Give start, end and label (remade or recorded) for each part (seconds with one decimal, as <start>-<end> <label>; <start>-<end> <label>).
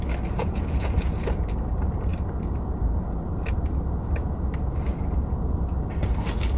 0.0-0.4 recorded; 0.4-1.3 remade; 1.3-6.6 recorded